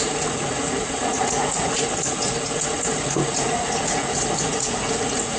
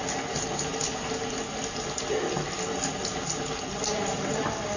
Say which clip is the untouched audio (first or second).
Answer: second